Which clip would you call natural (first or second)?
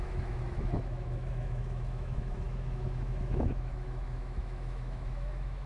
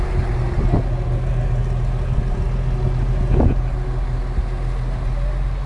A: second